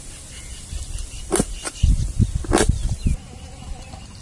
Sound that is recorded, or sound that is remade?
recorded